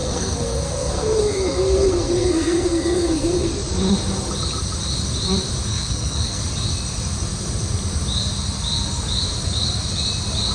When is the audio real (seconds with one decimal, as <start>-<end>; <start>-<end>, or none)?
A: 3.5-5.7; 6.4-10.5